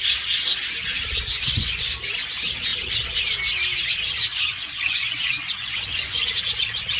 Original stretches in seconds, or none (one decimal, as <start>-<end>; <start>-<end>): 0.0-1.3; 1.9-4.3; 6.3-7.0